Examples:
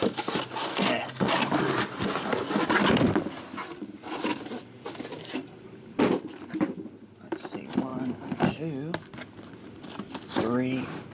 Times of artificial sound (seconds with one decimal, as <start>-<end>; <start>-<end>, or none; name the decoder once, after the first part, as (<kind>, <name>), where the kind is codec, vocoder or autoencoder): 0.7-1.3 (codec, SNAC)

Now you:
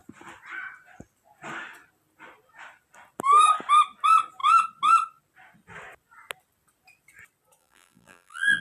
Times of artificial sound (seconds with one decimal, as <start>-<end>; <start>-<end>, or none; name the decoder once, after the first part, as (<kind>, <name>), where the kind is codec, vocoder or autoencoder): 7.6-8.6 (vocoder, BigVGAN v2)

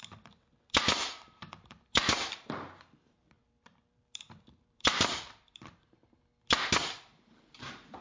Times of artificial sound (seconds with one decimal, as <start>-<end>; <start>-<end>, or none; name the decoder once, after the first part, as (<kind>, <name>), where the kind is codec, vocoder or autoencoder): 0.0-6.0 (vocoder, BigVGAN v2); 6.7-8.0

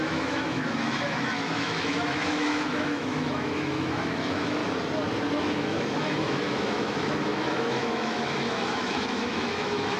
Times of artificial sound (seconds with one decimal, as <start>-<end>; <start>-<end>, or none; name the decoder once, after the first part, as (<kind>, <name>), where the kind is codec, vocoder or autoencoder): 0.0-4.6 (autoencoder, DAC-VAE); 5.4-10.0

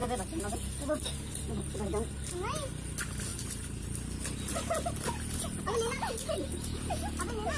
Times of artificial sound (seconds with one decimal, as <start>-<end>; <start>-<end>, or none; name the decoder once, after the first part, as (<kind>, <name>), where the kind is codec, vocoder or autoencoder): none

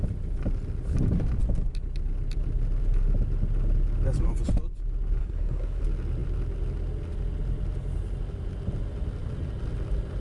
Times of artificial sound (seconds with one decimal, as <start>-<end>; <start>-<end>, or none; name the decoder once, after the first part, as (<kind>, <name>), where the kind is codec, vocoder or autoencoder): 5.2-5.8 (codec, SNAC)

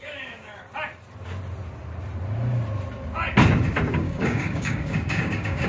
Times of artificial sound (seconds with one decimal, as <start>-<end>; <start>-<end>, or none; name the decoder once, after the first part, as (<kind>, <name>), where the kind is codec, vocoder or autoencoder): 0.0-0.5 (codec, DAC); 3.9-5.7

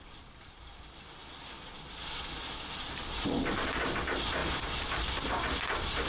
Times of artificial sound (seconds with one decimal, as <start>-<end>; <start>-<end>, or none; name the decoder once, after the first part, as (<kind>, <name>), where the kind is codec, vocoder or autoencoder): none